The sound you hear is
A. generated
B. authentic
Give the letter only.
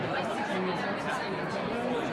B